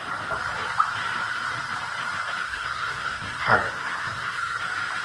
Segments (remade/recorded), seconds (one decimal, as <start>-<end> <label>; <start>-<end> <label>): 0.0-2.4 recorded; 2.4-4.6 remade; 4.6-5.0 recorded